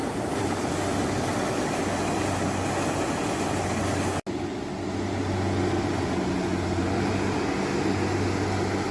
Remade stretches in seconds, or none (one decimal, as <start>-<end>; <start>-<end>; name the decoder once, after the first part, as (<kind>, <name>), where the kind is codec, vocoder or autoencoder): 0.0-0.7 (vocoder, BigVGAN v2)